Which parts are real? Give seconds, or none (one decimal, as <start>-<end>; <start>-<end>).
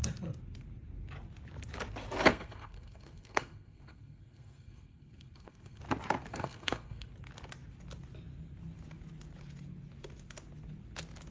0.0-2.3; 5.8-6.3; 7.1-11.3